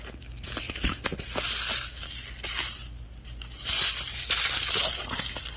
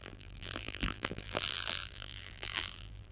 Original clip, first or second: first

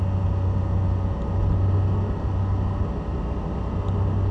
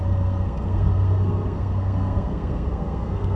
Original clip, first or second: first